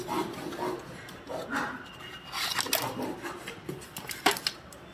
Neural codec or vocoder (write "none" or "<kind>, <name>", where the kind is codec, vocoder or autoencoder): none